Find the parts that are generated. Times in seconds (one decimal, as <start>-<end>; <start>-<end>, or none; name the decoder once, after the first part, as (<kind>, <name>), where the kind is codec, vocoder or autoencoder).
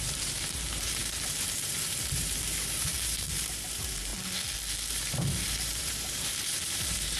0.0-4.1 (vocoder, BigVGAN v2); 4.9-7.2